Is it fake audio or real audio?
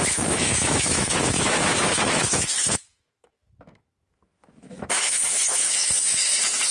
fake